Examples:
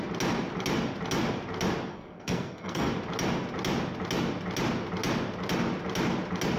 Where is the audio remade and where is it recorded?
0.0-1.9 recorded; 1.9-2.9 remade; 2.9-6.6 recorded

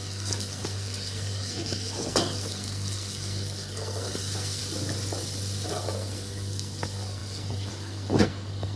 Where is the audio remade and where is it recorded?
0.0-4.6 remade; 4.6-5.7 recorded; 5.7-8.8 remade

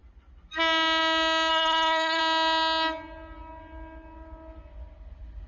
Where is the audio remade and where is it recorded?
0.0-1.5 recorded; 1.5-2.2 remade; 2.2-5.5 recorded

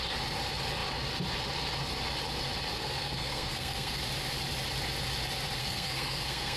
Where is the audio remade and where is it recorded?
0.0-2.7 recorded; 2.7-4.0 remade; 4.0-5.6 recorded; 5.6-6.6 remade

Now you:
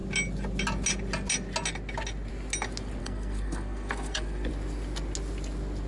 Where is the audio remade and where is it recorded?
0.0-3.0 recorded; 3.0-4.5 remade; 4.5-5.9 recorded

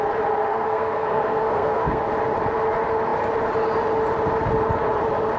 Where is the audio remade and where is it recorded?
0.0-0.5 recorded; 0.5-2.0 remade; 2.0-5.4 recorded